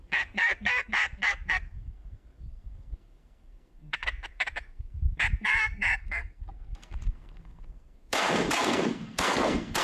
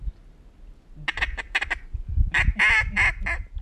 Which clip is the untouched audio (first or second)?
second